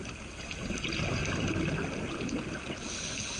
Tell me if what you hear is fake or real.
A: real